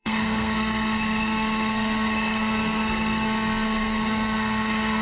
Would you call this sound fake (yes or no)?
yes